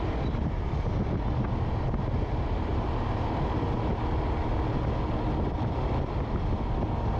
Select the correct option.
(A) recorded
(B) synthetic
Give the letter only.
A